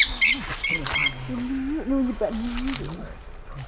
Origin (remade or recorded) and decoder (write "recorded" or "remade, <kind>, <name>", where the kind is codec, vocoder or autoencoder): recorded